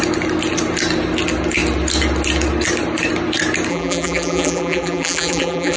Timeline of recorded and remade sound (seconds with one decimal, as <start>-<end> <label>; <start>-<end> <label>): 0.0-3.7 recorded; 3.7-5.8 remade